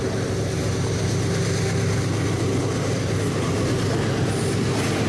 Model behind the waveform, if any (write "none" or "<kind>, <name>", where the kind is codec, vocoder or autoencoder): none